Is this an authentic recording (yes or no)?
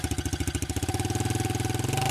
yes